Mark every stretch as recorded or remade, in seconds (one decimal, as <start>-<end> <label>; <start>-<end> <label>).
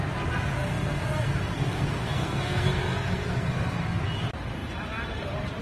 0.0-0.6 recorded; 0.6-4.0 remade; 4.0-5.6 recorded